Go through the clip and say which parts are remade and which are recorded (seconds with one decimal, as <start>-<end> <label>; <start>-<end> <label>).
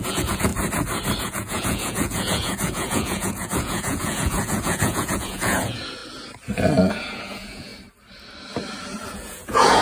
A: 0.0-0.5 remade; 0.5-1.2 recorded; 1.2-6.0 remade; 6.0-6.9 recorded; 6.9-7.7 remade; 7.7-9.1 recorded; 9.1-9.8 remade